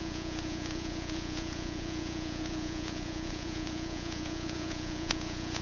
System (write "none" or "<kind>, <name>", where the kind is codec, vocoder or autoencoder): vocoder, Vocos